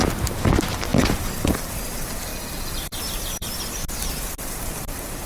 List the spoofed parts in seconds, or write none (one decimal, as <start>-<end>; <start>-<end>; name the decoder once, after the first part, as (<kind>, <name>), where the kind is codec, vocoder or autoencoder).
0.9-1.7 (vocoder, BigVGAN v2); 2.3-3.6